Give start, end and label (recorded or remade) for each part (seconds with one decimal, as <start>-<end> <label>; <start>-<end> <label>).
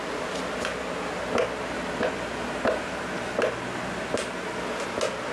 0.0-5.3 recorded